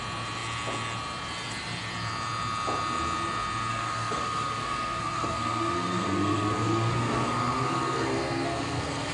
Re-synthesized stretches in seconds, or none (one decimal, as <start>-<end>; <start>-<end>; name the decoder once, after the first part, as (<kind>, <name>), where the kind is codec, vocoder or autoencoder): 3.7-9.1 (codec, SNAC)